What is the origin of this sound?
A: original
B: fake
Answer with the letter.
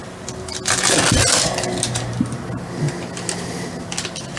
A